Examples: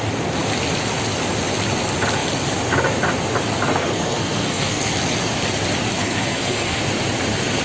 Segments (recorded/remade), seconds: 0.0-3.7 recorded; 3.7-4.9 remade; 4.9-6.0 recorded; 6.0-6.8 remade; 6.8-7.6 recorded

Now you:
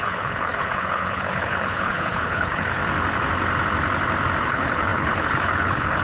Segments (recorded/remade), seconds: 0.0-2.8 remade; 2.8-4.4 recorded; 4.4-6.0 remade

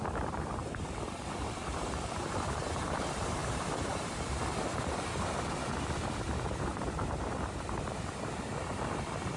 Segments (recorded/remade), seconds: 0.0-9.4 remade